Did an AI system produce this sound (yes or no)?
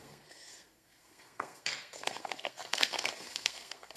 yes